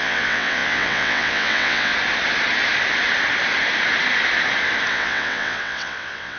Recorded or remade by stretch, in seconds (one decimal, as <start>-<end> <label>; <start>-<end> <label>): 0.0-1.9 remade; 1.9-4.9 recorded; 4.9-6.4 remade